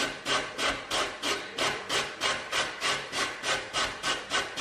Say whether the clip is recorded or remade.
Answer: recorded